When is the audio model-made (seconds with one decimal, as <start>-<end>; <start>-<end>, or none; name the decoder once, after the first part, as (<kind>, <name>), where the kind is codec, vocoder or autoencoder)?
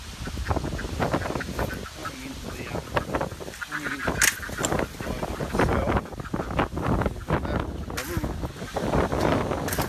none